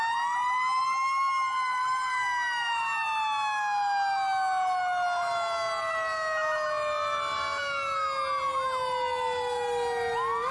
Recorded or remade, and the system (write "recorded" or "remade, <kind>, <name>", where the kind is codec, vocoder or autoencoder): recorded